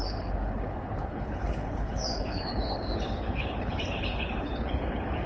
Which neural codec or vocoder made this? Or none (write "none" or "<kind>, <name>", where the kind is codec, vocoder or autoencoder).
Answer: codec, HILCodec